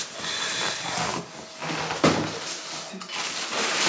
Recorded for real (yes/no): yes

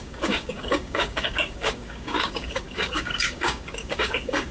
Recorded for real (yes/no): no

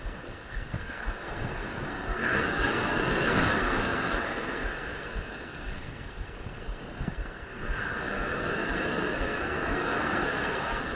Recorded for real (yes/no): no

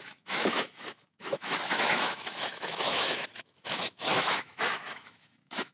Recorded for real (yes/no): no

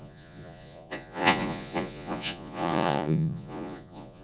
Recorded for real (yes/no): no